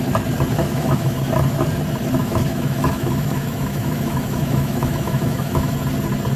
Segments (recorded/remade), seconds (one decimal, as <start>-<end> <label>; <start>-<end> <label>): 0.0-0.6 recorded; 0.6-1.2 remade; 1.2-2.2 recorded; 2.2-5.7 remade; 5.7-6.4 recorded